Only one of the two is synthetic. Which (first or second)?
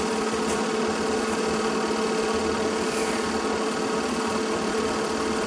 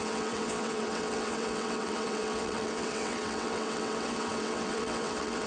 second